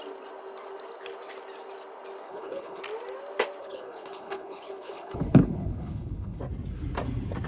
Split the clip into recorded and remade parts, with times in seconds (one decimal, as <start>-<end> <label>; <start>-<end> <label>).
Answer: 0.0-2.3 recorded; 2.3-2.8 remade; 2.8-3.6 recorded; 3.6-6.4 remade; 6.4-7.5 recorded